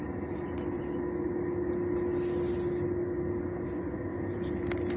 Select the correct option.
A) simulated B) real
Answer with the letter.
B